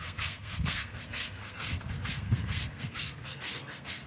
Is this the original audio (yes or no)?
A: no